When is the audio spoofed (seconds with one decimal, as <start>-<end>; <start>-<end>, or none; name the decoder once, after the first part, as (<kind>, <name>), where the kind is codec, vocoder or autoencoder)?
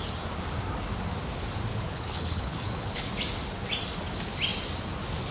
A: 1.7-3.1 (codec, HILCodec)